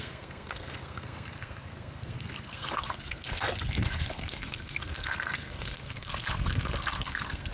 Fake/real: fake